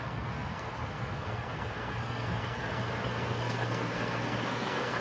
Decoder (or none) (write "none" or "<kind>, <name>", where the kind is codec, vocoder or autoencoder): codec, SNAC